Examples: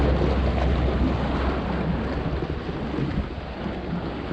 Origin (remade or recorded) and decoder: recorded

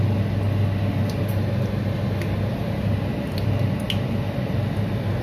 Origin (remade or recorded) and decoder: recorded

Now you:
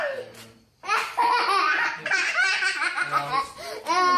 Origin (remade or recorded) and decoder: recorded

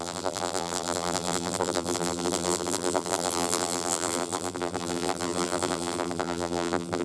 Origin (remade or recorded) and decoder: remade, vocoder, BigVGAN v2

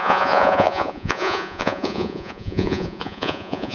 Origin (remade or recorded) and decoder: remade, vocoder, Vocos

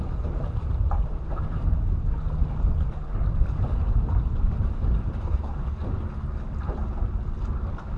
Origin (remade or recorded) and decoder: recorded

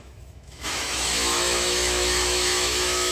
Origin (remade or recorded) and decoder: remade, autoencoder, DAC-VAE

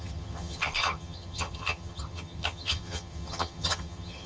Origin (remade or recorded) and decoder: remade, vocoder, HiFi-GAN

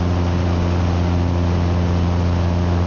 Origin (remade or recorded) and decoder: recorded